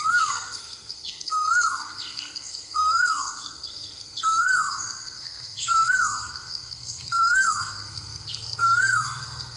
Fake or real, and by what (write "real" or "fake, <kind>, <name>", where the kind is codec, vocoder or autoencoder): fake, codec, SNAC